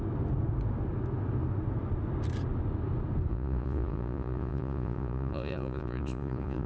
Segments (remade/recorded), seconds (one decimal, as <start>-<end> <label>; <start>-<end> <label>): 0.0-3.3 recorded; 3.3-6.7 remade